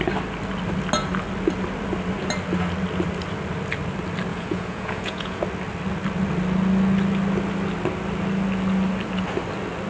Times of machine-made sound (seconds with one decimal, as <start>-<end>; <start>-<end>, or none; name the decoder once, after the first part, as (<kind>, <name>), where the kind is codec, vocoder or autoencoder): 4.3-5.4 (vocoder, Vocos)